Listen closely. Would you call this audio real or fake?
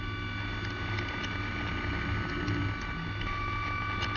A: real